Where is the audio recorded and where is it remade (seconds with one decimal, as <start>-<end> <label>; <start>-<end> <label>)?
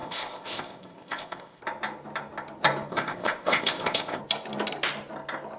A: 0.0-1.6 remade; 1.6-2.9 recorded; 2.9-4.2 remade; 4.2-5.6 recorded